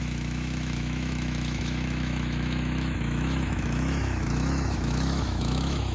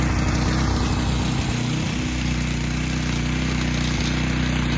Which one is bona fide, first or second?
second